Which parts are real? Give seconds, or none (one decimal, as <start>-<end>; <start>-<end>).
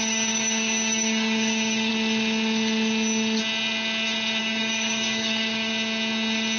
1.9-4.4; 5.7-6.6